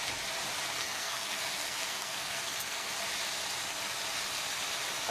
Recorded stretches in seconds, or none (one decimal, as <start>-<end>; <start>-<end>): 0.0-0.8; 2.9-5.1